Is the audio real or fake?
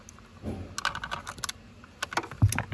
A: real